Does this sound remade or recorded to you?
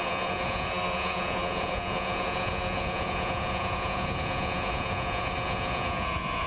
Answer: remade